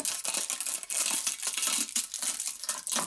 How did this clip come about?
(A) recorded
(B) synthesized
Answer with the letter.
A